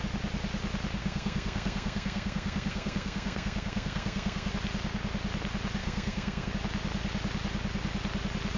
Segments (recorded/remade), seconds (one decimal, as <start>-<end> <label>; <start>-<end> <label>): 0.0-1.0 recorded; 1.0-4.5 remade; 4.5-5.8 recorded; 5.8-6.5 remade; 6.5-8.6 recorded